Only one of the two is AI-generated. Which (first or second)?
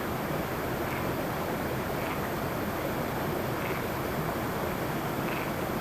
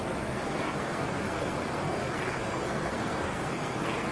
second